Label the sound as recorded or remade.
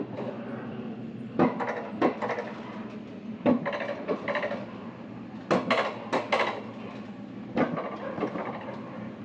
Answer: recorded